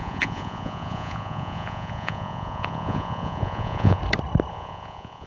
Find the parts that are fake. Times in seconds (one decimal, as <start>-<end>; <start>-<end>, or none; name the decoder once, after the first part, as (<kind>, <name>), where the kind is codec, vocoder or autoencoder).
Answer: 0.0-4.0 (vocoder, Vocos); 4.5-5.3